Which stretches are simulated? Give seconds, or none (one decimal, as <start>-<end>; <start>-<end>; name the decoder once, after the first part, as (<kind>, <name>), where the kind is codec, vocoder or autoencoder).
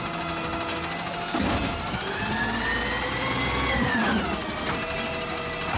none